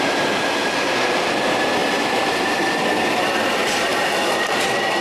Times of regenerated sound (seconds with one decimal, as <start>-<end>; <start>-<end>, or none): 1.8-2.4; 3.6-4.6